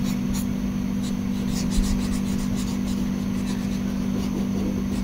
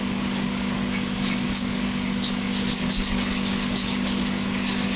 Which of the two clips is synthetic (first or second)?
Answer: second